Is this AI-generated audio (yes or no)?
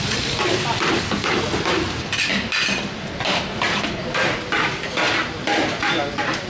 yes